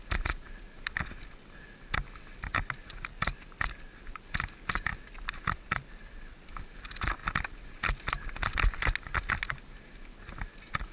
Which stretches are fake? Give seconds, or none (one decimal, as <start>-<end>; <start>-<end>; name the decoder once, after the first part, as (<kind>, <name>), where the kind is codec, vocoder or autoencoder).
3.1-3.8 (vocoder, BigVGAN v2); 4.9-6.5